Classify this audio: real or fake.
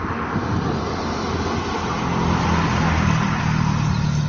real